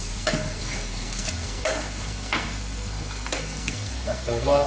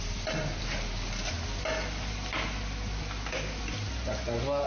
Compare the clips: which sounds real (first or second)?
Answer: second